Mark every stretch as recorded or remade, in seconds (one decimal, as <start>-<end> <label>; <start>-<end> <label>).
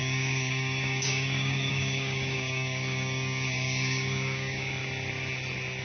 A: 0.0-4.8 remade; 4.8-5.8 recorded